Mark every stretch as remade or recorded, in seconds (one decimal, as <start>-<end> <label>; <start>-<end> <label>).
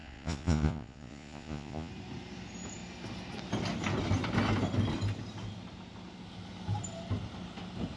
0.0-1.9 remade; 1.9-8.0 recorded